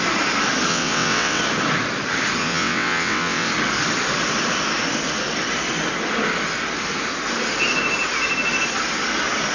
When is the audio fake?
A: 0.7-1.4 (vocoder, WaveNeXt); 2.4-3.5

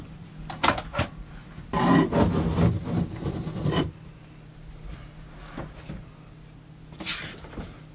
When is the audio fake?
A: none

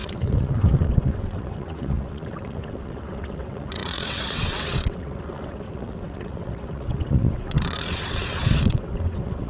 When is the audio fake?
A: 0.0-9.5 (vocoder, WaveNeXt)

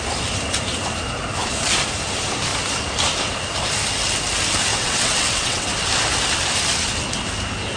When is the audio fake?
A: 4.7-5.7 (vocoder, WaveNeXt)

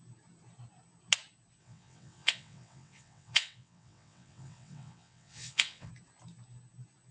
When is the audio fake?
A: 1.6-5.9 (vocoder, WaveNeXt)

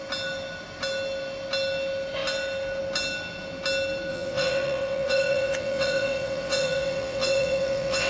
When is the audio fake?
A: 4.1-8.1 (vocoder, WaveNeXt)

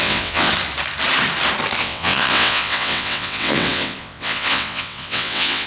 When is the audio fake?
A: 0.0-0.5 (vocoder, WaveNeXt); 1.8-5.7

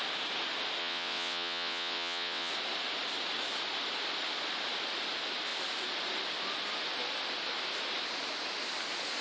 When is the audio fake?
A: 0.8-2.5 (vocoder, WaveNeXt)